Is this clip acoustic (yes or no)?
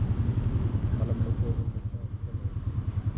yes